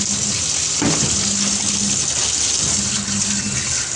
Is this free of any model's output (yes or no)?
yes